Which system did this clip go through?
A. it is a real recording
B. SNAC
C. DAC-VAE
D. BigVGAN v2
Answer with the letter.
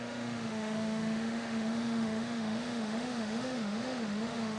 C